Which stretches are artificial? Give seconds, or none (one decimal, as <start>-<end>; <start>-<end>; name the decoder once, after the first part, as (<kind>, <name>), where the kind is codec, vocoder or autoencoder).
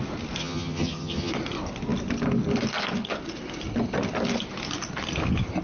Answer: 0.4-1.3 (vocoder, HiFi-GAN)